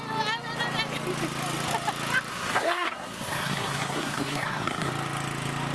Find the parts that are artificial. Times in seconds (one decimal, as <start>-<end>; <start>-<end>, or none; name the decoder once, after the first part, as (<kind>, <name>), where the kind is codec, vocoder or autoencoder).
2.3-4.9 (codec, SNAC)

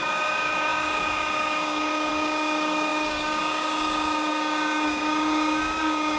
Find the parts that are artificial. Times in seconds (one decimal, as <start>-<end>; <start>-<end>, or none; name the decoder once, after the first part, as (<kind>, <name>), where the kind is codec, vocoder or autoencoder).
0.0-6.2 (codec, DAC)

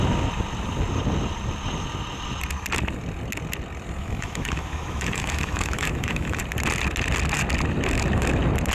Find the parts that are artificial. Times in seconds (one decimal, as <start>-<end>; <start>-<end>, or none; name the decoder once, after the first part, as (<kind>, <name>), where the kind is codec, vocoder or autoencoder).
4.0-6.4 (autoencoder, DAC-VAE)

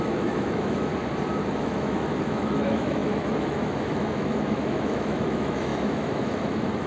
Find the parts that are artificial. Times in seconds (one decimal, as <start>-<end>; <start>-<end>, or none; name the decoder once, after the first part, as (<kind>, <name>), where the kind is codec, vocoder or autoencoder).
0.0-0.9 (autoencoder, DAC-VAE); 1.6-6.9

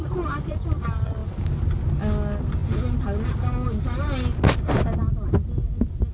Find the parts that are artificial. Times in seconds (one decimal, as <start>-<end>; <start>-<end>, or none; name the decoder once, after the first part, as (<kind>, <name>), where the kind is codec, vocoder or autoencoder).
none

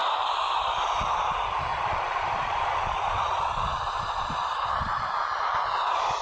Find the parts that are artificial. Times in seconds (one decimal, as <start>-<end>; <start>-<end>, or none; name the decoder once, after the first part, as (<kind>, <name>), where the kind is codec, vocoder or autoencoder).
1.7-5.0 (vocoder, Vocos)

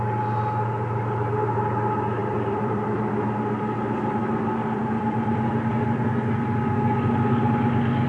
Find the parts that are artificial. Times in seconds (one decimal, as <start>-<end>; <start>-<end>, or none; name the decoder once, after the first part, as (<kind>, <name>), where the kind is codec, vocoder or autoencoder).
2.2-3.0 (vocoder, BigVGAN v2); 4.2-5.7